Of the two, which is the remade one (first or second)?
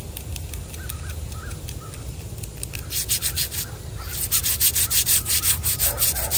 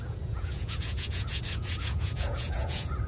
second